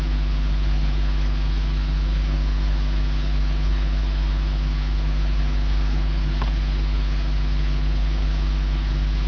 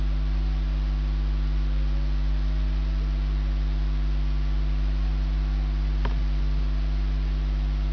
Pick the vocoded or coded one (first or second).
first